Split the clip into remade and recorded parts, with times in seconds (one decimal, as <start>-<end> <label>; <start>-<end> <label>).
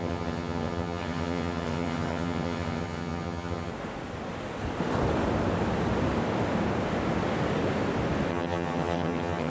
0.0-3.7 remade; 3.7-8.3 recorded; 8.3-9.5 remade